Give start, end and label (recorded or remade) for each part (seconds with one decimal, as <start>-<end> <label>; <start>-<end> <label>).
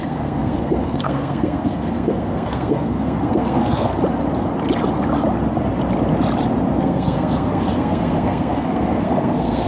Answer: 0.0-3.9 remade; 3.9-6.8 recorded; 6.8-9.7 remade